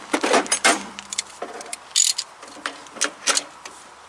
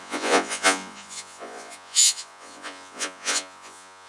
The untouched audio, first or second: first